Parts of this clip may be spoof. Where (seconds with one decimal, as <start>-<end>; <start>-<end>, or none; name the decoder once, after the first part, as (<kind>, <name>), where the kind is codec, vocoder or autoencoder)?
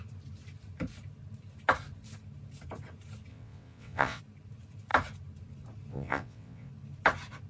3.3-4.2 (vocoder, WaveNeXt); 5.9-6.7